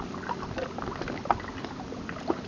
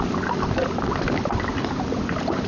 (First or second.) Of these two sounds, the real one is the first